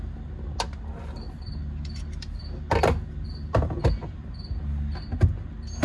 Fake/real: real